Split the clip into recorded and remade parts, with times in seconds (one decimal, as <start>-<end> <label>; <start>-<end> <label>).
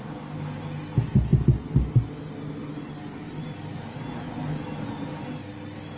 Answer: 0.0-6.0 recorded